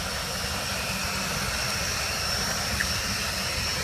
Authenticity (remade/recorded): recorded